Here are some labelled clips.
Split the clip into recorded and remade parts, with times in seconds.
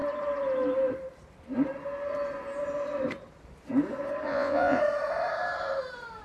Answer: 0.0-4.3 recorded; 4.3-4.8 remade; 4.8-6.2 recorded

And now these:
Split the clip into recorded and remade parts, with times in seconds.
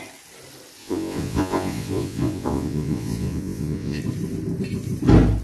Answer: 0.0-0.8 recorded; 0.8-4.0 remade; 4.0-5.4 recorded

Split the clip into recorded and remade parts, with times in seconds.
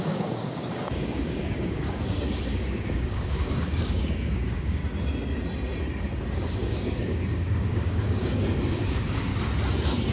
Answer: 0.0-4.8 remade; 4.8-6.3 recorded; 6.3-9.3 remade; 9.3-10.1 recorded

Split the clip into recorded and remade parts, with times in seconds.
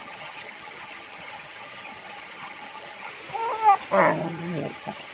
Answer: 0.0-3.1 remade; 3.1-4.2 recorded; 4.2-5.1 remade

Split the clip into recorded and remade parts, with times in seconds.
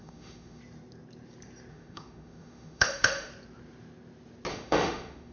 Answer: 0.0-0.6 remade; 0.6-1.7 recorded; 1.7-3.3 remade; 3.3-4.5 recorded; 4.5-5.3 remade